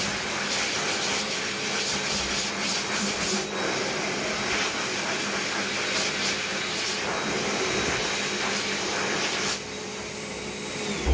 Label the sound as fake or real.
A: real